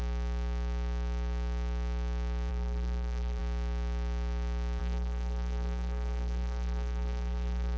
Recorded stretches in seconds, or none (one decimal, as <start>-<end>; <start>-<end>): 0.0-2.5; 3.4-4.8